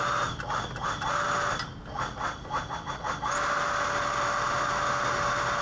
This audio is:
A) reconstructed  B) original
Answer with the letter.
B